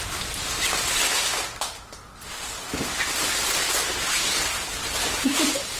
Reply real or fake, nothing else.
real